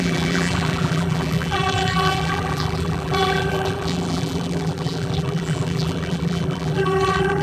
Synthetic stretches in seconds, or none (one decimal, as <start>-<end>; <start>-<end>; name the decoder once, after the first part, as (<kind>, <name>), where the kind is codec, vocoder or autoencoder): 0.0-7.4 (vocoder, BigVGAN v2)